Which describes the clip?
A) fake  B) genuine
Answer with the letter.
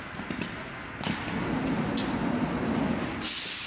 B